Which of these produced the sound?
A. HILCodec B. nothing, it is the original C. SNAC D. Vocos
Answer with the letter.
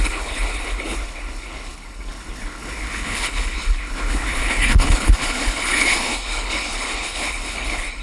A